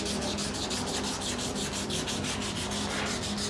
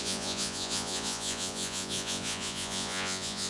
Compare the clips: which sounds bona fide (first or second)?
first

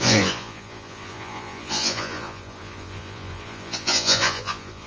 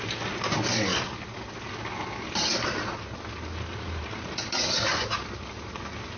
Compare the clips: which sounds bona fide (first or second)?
second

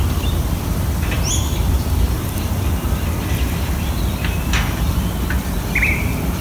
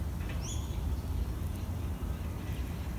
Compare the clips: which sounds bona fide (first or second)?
second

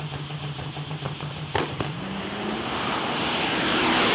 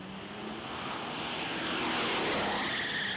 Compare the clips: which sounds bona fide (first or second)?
second